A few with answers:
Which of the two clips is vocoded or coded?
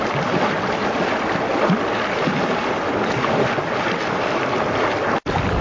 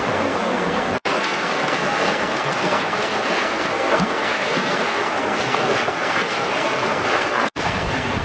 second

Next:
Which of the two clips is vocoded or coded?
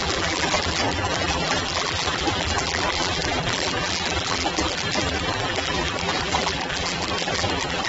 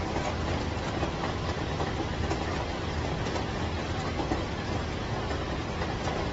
first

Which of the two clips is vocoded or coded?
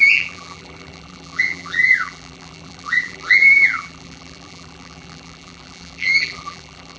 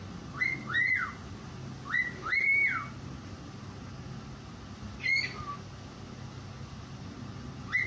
first